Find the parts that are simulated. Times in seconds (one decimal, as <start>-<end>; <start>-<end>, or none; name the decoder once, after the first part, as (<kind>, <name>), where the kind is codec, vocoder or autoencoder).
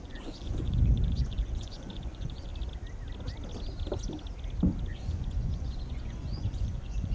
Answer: 0.0-2.5 (vocoder, Vocos); 4.9-7.1